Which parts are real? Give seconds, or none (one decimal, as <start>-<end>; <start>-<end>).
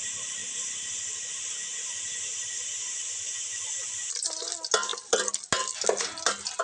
0.0-6.6